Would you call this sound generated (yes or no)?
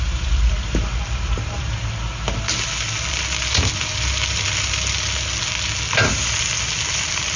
no